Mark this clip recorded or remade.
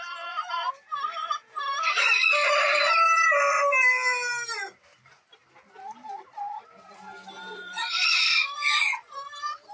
recorded